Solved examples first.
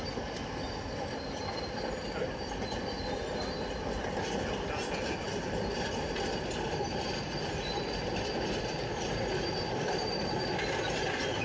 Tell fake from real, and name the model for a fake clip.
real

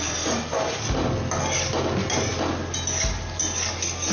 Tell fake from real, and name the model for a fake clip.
real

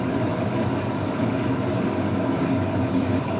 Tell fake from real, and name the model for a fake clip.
fake, codec, DAC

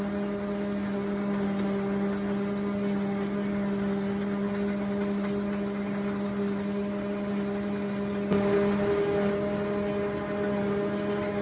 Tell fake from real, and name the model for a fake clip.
real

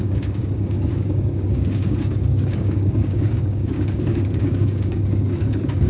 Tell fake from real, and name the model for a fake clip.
fake, codec, DAC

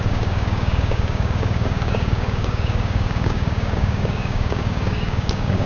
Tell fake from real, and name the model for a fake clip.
fake, codec, DAC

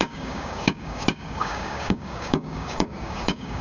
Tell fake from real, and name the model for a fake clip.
fake, codec, DAC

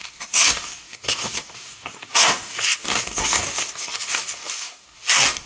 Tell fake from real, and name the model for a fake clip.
fake, codec, DAC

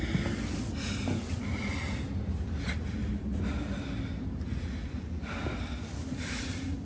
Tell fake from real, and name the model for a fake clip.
real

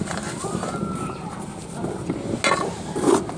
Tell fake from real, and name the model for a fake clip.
real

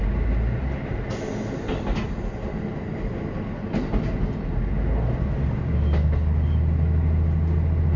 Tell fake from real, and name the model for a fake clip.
real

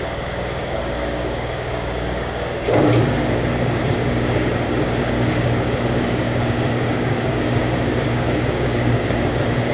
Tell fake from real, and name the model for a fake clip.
fake, codec, DAC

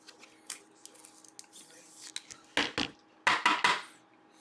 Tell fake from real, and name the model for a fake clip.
real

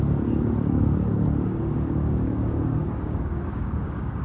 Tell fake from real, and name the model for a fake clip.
fake, codec, DAC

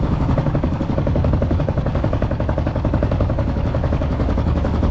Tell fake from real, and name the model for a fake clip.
fake, codec, DAC